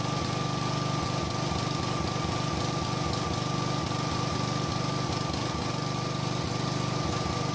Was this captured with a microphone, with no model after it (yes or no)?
yes